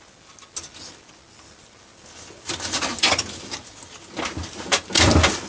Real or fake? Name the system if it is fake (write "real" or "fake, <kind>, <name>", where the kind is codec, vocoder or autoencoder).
real